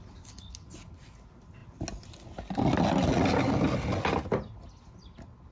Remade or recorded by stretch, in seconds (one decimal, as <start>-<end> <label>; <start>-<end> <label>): 0.0-5.5 recorded